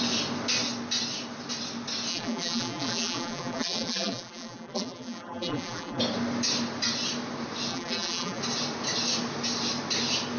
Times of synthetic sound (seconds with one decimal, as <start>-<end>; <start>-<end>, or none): 2.1-6.0; 7.7-8.4